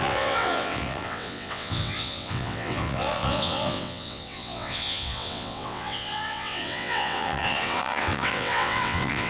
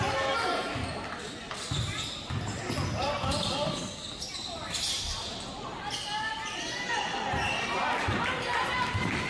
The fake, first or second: first